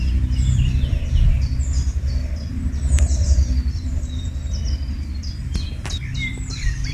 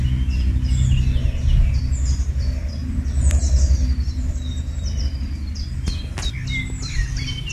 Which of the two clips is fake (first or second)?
first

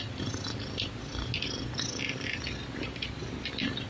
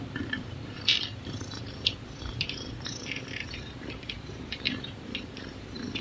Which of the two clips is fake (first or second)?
second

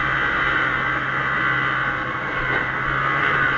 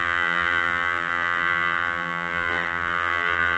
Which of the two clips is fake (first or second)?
second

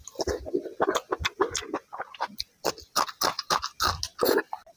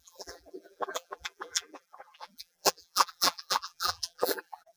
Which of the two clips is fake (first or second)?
second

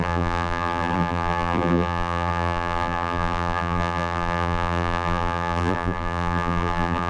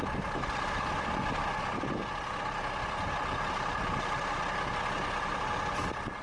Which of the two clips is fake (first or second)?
first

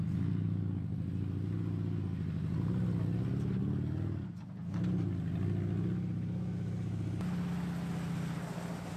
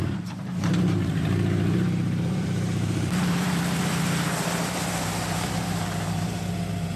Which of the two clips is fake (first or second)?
second